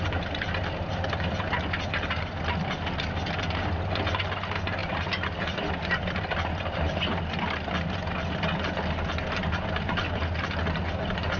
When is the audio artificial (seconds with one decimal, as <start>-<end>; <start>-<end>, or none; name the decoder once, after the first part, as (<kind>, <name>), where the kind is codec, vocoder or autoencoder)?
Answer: 4.8-7.2 (vocoder, BigVGAN v2)